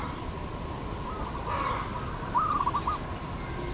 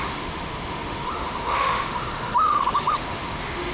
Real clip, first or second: first